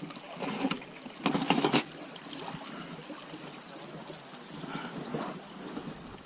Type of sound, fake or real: real